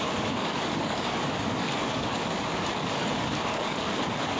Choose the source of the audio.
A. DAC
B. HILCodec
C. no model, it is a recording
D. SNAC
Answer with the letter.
A